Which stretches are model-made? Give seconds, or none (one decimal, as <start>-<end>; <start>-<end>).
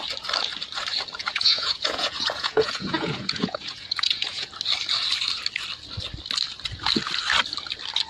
1.2-4.5